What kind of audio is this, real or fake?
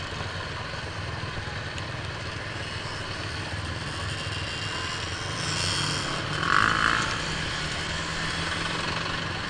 real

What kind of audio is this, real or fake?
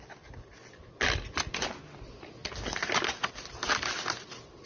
real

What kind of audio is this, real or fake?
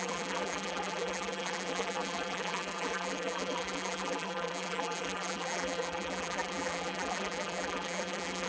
fake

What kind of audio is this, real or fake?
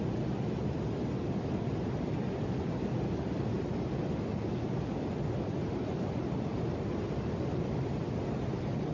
real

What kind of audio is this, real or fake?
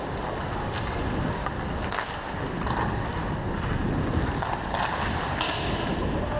real